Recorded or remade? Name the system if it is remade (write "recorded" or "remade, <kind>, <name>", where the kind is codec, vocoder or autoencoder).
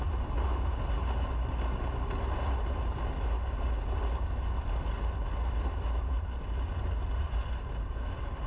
recorded